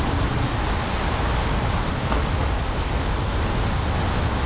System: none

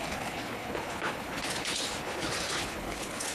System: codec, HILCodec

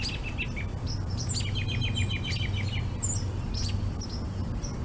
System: none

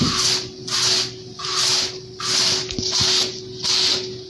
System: none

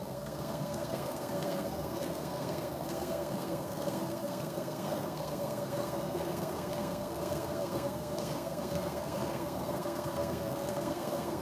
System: codec, SNAC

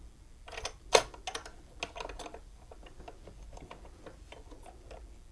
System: none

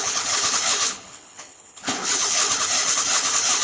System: codec, HILCodec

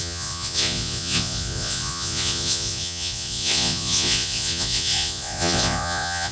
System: vocoder, Vocos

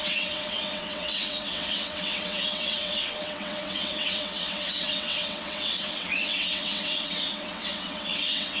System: vocoder, WaveNeXt